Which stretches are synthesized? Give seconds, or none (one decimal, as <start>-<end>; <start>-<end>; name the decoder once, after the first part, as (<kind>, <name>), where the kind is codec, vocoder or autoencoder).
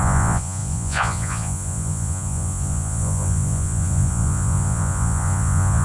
0.0-5.8 (vocoder, Vocos)